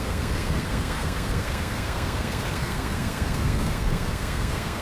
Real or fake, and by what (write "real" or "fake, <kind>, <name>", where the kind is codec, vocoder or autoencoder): fake, codec, SNAC